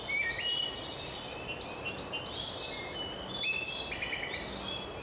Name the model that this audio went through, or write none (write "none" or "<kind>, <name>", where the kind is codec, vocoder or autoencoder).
none